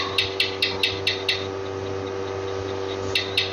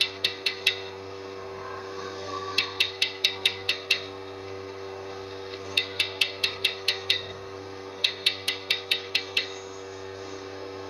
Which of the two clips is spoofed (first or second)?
second